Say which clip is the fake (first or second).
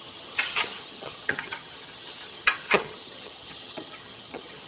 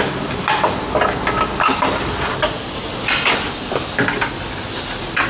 first